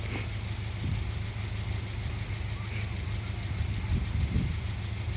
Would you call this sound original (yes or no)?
yes